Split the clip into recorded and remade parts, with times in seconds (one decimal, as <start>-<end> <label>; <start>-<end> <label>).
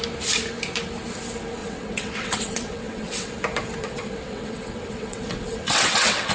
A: 0.0-1.6 recorded; 1.6-3.3 remade; 3.3-3.8 recorded; 3.8-6.3 remade